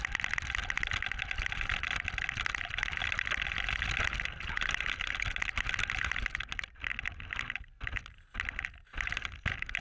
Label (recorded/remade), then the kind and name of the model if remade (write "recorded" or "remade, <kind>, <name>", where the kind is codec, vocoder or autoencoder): recorded